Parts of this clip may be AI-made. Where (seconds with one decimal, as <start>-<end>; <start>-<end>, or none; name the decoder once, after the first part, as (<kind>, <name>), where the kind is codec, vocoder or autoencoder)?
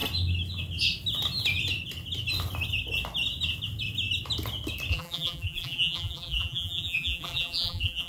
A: 4.9-8.1 (vocoder, BigVGAN v2)